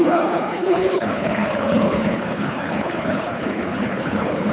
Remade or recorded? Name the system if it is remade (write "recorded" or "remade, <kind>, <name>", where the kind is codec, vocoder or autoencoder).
remade, codec, HILCodec